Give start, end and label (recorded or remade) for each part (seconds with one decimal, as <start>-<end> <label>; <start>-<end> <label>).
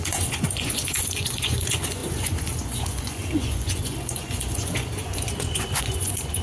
0.0-6.4 remade